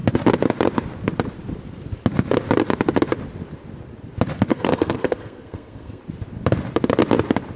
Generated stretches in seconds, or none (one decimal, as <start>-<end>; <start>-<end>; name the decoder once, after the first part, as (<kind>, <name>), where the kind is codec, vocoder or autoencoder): 4.5-6.0 (codec, SNAC)